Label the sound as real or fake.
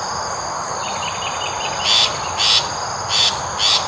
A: real